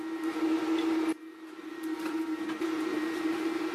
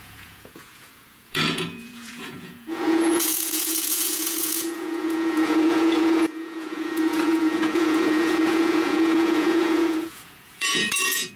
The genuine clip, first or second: first